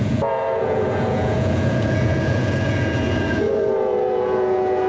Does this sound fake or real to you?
fake